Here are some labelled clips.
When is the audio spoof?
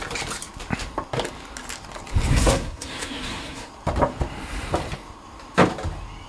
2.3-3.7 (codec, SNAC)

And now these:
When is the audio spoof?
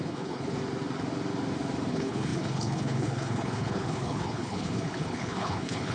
0.0-0.6 (codec, HILCodec); 1.9-5.9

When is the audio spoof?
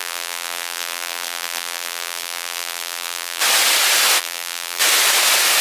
0.0-3.4 (vocoder, BigVGAN v2); 4.2-4.8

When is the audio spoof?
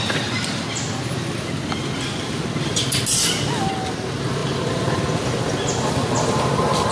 none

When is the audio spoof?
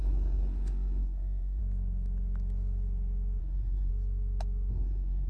0.0-1.6 (codec, SNAC); 3.4-3.9; 4.7-5.3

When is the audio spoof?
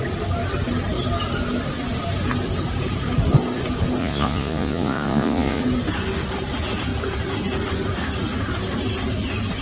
4.0-5.6 (vocoder, Vocos)